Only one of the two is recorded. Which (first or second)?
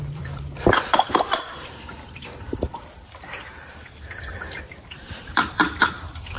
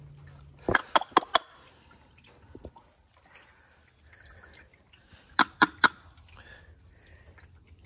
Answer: second